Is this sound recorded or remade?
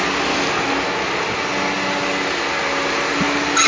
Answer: recorded